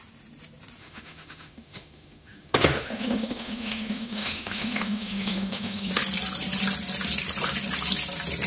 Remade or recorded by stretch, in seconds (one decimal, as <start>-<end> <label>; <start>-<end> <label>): 0.0-0.8 recorded; 0.8-5.9 remade; 5.9-8.5 recorded

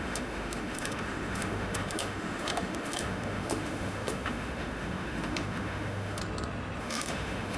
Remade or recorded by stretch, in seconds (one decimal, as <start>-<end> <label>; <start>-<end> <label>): 0.0-6.2 remade; 6.2-6.8 recorded; 6.8-7.6 remade

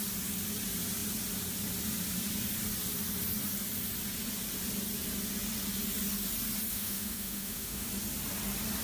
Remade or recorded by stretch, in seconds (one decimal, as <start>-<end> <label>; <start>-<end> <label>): 0.0-6.7 recorded; 6.7-7.9 remade; 7.9-8.8 recorded